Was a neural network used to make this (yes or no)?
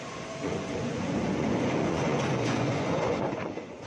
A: yes